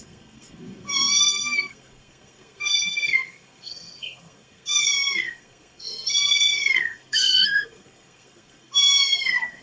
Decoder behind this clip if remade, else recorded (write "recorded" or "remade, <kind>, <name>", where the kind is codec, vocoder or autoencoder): remade, codec, SNAC